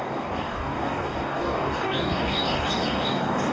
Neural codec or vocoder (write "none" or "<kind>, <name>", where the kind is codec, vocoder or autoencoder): codec, DAC